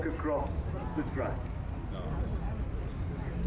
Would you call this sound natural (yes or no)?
yes